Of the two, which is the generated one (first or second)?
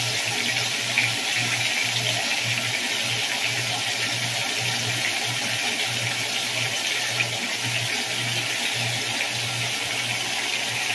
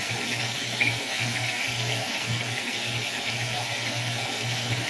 second